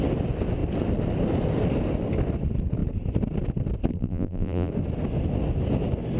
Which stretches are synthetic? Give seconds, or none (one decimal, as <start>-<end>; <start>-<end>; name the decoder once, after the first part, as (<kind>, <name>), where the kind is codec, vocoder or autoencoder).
3.9-4.7 (vocoder, BigVGAN v2)